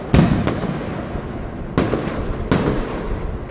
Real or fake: real